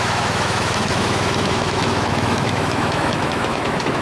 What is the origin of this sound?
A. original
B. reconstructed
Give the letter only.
B